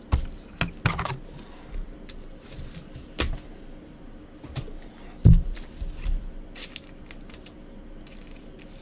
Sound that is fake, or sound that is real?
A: real